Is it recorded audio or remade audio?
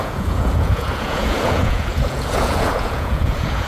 remade